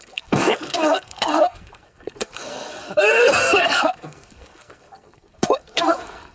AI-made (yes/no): yes